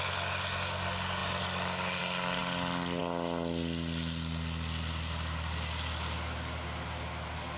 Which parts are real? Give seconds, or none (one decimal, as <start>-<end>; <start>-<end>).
0.0-7.6